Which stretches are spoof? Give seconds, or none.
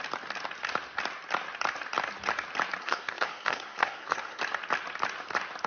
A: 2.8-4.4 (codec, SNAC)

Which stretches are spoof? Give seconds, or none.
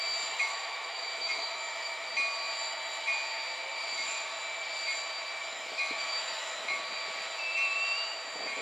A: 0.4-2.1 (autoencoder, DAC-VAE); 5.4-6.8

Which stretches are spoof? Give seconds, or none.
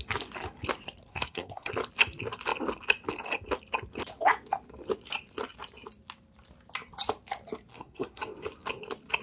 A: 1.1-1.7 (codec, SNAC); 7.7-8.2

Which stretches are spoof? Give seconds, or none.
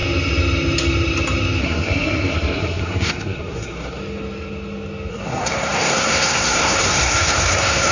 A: 1.6-4.0 (codec, SNAC); 5.1-7.9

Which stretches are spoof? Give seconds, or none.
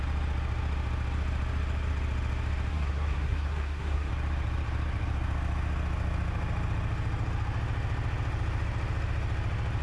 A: 2.7-4.1 (codec, SNAC)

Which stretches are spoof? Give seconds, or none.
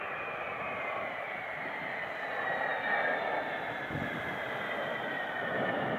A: 0.0-2.7 (vocoder, BigVGAN v2); 5.2-6.0